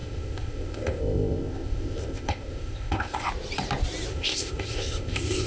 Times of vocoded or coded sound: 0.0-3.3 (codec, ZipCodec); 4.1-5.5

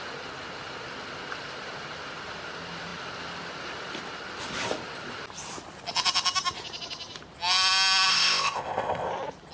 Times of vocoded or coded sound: 8.1-9.1 (codec, ZipCodec)

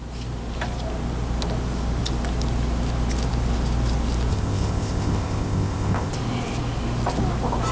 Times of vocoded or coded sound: 4.3-6.1 (codec, ZipCodec)

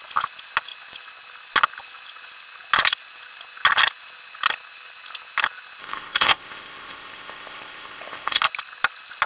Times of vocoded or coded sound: 5.8-8.4 (codec, ZipCodec)

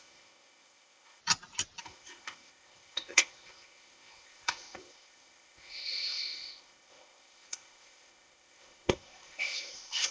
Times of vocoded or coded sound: 0.0-1.2 (codec, ZipCodec); 1.8-10.1

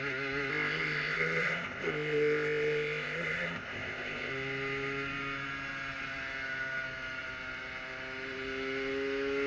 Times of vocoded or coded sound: 0.5-4.3 (codec, ZipCodec)

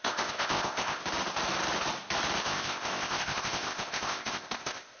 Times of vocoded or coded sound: 0.0-1.0 (codec, ZipCodec); 2.4-5.0